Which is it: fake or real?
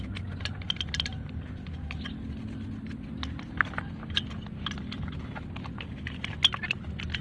real